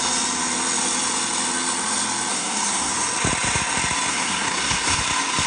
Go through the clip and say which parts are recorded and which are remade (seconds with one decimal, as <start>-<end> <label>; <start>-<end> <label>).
0.0-2.3 recorded; 2.3-2.9 remade; 2.9-4.1 recorded; 4.1-5.0 remade; 5.0-5.5 recorded